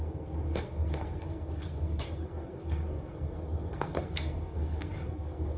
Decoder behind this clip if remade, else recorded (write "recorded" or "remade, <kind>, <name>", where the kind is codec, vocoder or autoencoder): remade, codec, SNAC